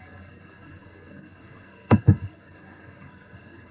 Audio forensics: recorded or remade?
remade